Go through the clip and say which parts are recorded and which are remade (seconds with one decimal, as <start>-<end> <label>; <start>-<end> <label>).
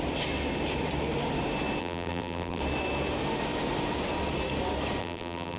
0.0-1.8 recorded; 1.8-2.6 remade; 2.6-5.0 recorded; 5.0-5.6 remade